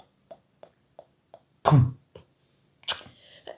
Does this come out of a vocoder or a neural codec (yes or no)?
no